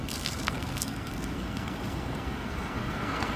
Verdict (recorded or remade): remade